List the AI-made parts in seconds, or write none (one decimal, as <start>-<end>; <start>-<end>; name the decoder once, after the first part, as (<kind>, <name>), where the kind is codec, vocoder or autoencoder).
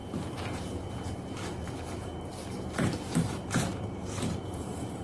0.0-5.0 (vocoder, BigVGAN v2)